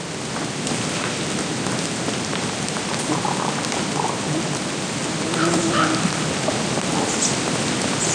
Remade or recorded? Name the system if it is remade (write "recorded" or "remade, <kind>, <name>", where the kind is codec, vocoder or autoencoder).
recorded